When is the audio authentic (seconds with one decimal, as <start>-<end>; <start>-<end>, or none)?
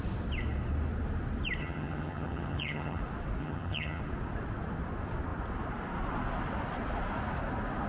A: 0.0-1.6; 3.0-3.4; 4.0-7.9